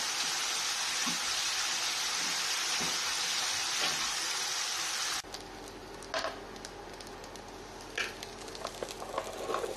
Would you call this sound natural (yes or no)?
yes